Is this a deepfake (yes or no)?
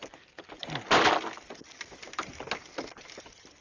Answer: no